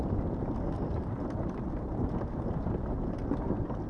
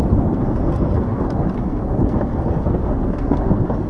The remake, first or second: second